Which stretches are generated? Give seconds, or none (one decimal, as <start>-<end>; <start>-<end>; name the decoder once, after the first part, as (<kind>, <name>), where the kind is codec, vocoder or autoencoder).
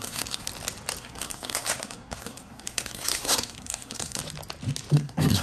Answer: 0.0-0.5 (codec, SNAC); 1.0-4.2; 4.9-5.4